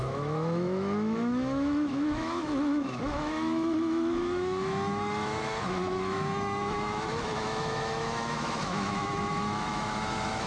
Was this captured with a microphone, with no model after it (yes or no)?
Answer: no